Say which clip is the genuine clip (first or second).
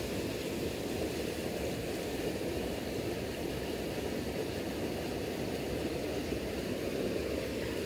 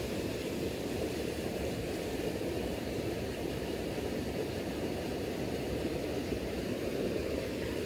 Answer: first